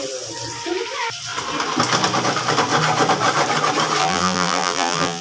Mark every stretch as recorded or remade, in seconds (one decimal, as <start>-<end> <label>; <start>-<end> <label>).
0.0-4.0 recorded; 4.0-5.2 remade